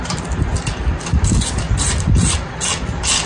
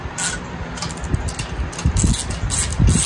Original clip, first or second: second